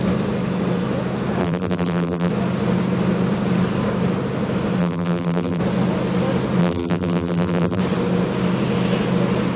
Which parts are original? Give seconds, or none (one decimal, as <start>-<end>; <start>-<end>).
0.0-1.4; 2.3-4.8; 5.6-6.6; 7.8-9.6